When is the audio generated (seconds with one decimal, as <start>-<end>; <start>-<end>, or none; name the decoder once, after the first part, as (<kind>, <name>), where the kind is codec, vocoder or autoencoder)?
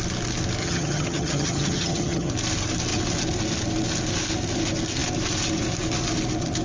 0.6-2.3 (vocoder, HiFi-GAN)